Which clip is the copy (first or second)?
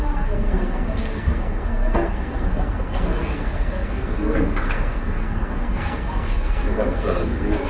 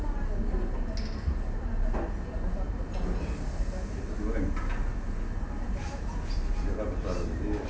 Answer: first